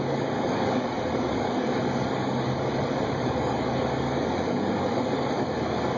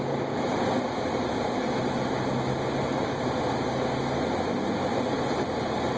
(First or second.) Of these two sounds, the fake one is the first